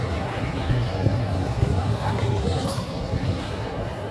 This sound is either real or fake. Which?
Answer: fake